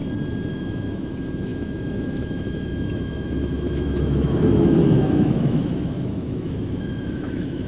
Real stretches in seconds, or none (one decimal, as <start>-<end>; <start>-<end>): 0.0-0.5